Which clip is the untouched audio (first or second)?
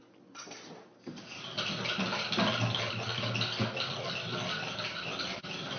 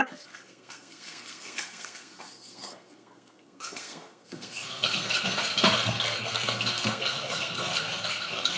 first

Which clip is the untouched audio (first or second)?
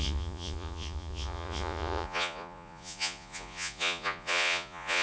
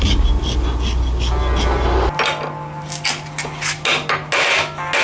second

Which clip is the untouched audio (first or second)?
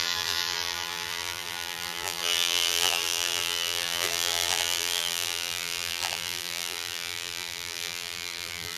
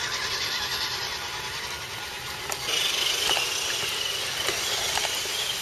second